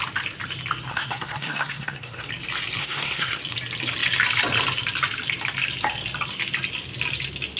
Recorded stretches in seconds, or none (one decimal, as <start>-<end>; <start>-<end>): 0.0-0.9; 2.3-2.8; 3.4-7.6

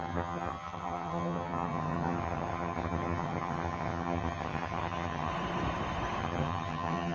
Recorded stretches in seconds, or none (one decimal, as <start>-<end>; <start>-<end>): 5.3-6.2